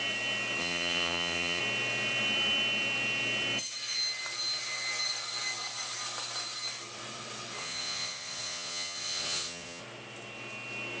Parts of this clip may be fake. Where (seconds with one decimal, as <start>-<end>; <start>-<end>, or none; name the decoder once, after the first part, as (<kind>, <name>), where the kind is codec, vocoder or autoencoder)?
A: 0.6-1.6 (vocoder, Vocos); 7.6-9.8